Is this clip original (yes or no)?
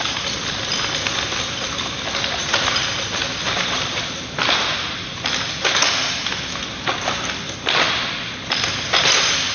yes